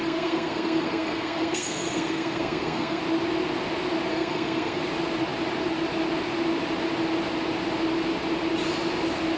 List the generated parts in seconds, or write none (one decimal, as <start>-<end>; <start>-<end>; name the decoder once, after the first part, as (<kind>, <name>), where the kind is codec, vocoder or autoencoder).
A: 0.0-3.0 (codec, SNAC); 4.1-4.8